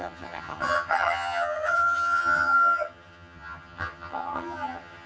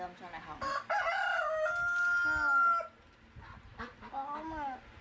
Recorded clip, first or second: second